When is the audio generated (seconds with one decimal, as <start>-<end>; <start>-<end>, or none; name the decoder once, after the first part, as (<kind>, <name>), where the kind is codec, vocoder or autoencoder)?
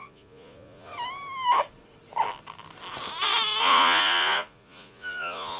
0.0-0.9 (vocoder, Vocos); 3.6-5.6